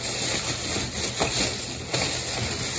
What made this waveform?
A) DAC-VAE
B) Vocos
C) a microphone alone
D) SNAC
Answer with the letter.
C